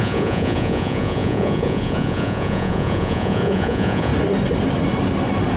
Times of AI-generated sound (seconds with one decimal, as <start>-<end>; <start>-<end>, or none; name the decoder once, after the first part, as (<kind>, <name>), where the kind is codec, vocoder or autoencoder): 0.0-4.1 (vocoder, Vocos)